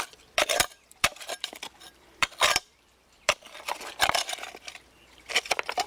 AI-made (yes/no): yes